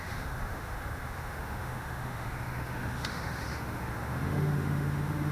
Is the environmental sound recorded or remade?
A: remade